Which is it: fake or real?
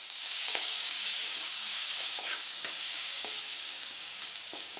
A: fake